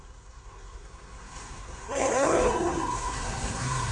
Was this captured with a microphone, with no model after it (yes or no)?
no